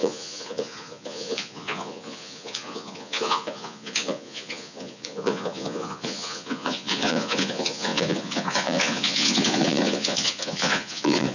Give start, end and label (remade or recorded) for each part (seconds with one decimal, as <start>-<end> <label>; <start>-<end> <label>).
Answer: 0.0-11.3 remade